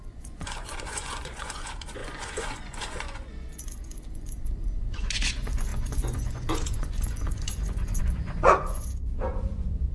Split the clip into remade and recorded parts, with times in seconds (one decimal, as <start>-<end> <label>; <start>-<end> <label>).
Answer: 0.0-9.9 remade